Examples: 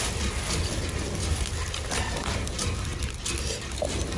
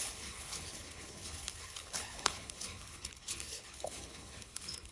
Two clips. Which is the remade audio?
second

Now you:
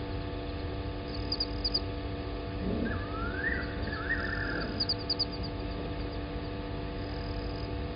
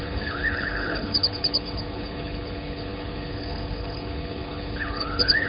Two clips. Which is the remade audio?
second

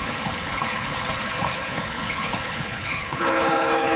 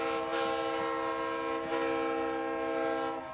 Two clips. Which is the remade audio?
first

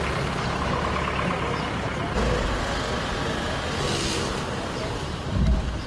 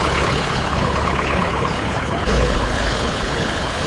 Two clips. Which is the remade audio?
second